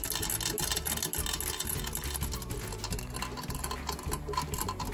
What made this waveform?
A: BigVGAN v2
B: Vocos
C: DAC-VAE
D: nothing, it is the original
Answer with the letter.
D